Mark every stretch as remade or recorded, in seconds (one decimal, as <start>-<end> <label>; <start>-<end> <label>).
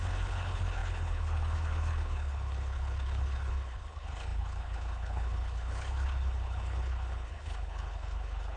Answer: 0.0-8.6 remade